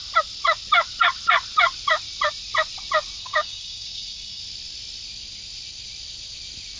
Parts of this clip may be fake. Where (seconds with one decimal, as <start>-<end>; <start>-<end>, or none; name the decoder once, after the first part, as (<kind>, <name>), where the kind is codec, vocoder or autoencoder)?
3.2-4.4 (codec, DAC)